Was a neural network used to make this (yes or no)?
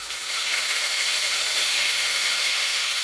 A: yes